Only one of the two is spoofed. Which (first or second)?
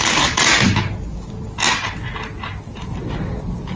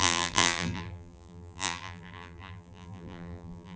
second